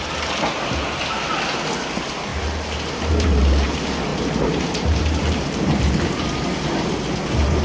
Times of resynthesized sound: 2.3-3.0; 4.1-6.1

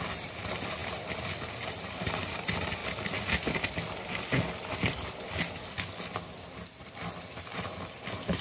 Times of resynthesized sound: 0.0-2.8; 6.8-8.4

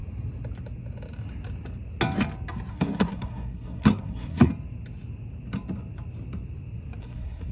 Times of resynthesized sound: 2.7-4.5; 7.0-7.5

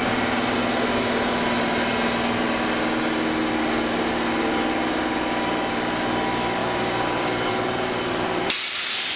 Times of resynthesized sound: 6.6-7.5